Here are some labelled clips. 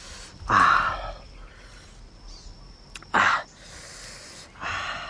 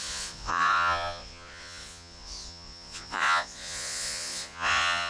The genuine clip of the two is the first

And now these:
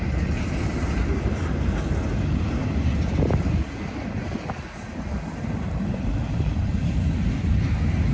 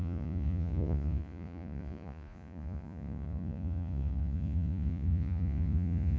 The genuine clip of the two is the first